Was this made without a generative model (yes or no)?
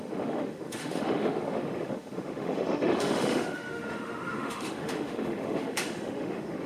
no